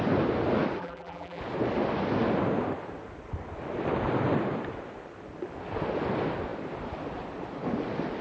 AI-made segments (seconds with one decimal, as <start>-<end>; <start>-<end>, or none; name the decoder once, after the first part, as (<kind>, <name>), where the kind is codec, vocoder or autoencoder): 0.8-1.4 (vocoder, BigVGAN v2)